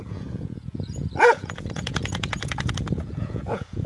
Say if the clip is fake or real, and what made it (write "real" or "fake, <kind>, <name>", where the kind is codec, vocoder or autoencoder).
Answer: fake, vocoder, Vocos